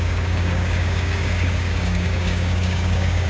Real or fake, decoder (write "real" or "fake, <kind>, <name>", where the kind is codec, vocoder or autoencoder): fake, codec, DAC